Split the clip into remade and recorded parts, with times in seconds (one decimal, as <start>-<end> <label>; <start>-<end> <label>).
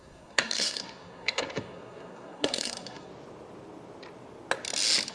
0.0-3.1 remade; 3.1-5.1 recorded